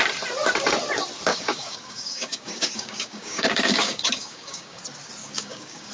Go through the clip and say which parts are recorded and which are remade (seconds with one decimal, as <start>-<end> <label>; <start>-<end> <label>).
0.0-1.3 recorded; 1.3-4.8 remade; 4.8-5.2 recorded; 5.2-5.9 remade